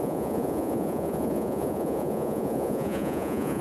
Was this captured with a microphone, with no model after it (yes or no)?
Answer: no